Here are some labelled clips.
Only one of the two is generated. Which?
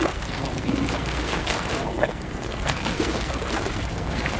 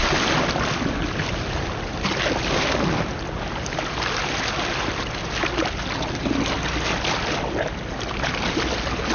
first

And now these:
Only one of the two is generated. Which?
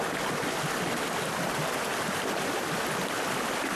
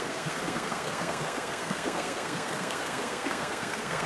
second